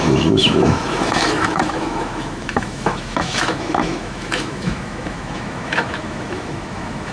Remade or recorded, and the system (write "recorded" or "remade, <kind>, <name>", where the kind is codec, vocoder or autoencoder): remade, autoencoder, DAC-VAE